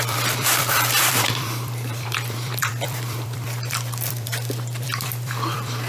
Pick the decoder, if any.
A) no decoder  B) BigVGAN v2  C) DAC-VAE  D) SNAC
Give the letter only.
B